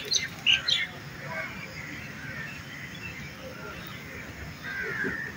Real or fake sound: real